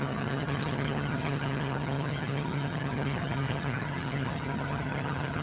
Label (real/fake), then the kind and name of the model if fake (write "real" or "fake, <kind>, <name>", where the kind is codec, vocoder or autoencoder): fake, vocoder, HiFi-GAN